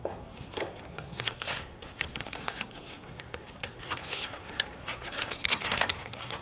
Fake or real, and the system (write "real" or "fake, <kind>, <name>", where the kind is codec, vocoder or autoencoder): fake, codec, SNAC